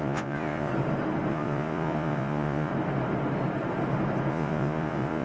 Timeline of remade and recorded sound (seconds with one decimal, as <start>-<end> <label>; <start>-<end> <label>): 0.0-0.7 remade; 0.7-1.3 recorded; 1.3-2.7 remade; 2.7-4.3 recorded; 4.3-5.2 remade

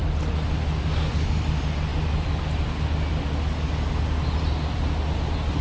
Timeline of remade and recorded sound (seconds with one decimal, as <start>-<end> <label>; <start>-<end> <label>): 0.0-5.6 recorded

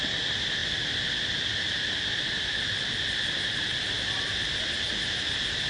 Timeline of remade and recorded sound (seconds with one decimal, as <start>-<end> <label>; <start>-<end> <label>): 0.0-5.7 recorded

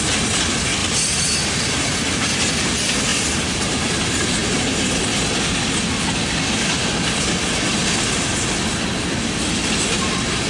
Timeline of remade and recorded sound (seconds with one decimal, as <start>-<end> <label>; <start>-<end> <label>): 0.0-0.8 recorded; 0.8-2.5 remade; 2.5-3.1 recorded; 3.1-3.9 remade; 3.9-10.5 recorded

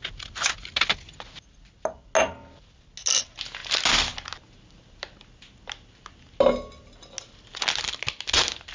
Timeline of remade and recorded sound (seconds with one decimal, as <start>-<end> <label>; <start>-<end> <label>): 0.0-8.7 recorded

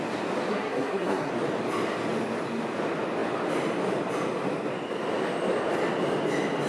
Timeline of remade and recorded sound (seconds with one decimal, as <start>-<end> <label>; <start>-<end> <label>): 0.0-0.5 recorded; 0.5-1.3 remade; 1.3-6.7 recorded

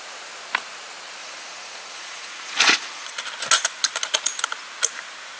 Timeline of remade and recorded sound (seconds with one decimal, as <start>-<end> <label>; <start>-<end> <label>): 0.0-1.2 recorded; 1.2-3.2 remade; 3.2-5.4 recorded

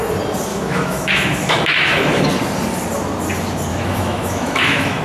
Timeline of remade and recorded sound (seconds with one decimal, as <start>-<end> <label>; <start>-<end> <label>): 0.0-0.5 recorded; 0.5-2.3 remade; 2.3-3.7 recorded; 3.7-5.0 remade